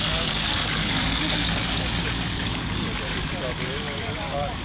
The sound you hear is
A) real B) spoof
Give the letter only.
B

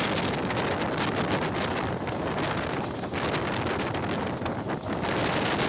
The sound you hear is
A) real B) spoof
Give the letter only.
A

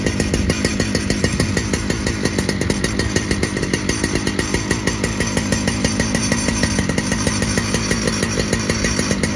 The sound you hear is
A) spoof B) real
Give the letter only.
B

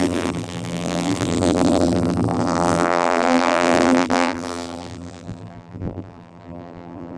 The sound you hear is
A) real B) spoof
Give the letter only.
B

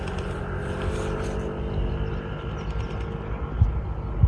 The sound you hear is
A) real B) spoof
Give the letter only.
A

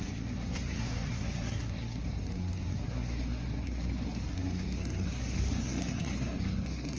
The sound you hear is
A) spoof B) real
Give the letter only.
A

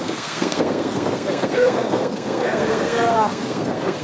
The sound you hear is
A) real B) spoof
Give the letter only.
B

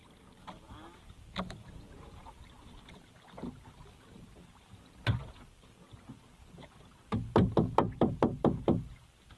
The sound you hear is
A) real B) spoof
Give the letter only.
A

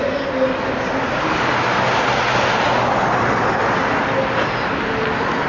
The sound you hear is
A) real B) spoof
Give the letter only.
A